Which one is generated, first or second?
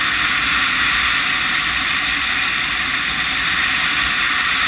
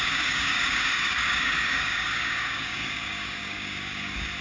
second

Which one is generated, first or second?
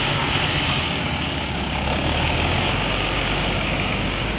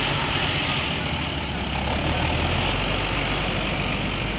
first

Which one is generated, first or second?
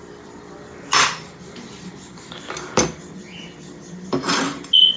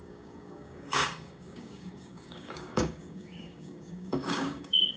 second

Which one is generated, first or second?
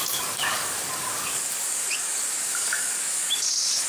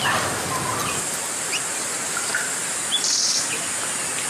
first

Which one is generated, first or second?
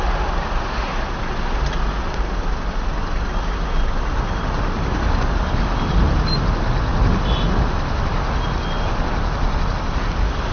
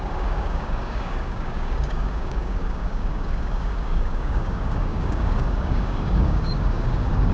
second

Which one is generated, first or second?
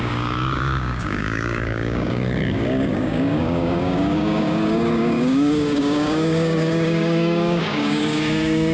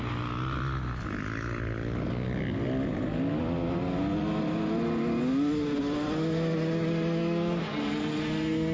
first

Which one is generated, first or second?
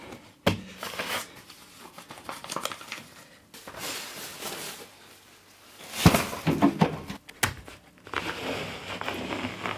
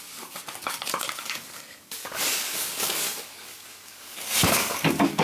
second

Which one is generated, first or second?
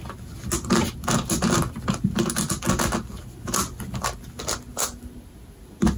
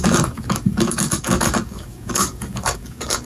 second